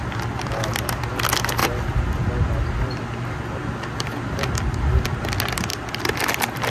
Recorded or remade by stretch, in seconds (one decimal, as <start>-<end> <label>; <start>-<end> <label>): 0.0-6.7 recorded